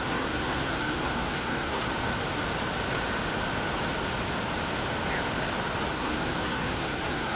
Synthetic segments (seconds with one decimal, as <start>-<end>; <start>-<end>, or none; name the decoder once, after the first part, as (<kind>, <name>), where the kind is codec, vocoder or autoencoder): 0.0-1.8 (codec, SNAC); 5.9-7.4